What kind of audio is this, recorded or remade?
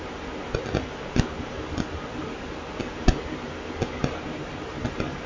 recorded